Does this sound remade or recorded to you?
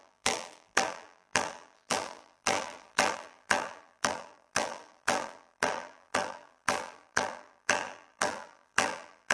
remade